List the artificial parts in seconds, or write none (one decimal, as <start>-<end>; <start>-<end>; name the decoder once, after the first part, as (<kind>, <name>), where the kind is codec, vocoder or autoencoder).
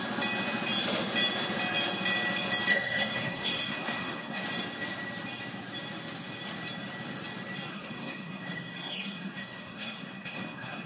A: 2.7-4.4 (codec, SNAC); 7.7-10.9